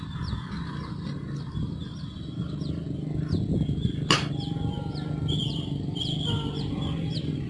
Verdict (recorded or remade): recorded